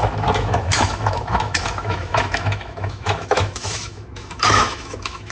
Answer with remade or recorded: remade